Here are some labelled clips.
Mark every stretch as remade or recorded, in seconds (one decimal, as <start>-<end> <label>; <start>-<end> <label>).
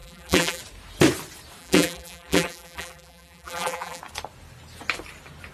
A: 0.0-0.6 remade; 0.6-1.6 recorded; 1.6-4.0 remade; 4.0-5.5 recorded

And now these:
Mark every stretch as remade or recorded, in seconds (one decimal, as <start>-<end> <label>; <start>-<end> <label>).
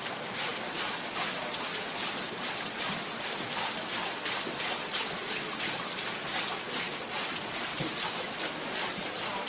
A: 0.0-7.7 recorded; 7.7-8.4 remade; 8.4-9.5 recorded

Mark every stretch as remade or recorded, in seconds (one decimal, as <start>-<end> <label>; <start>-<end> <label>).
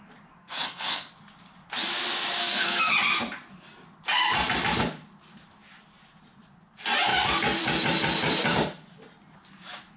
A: 0.0-0.4 recorded; 0.4-1.1 remade; 1.1-2.4 recorded; 2.4-2.9 remade; 2.9-10.0 recorded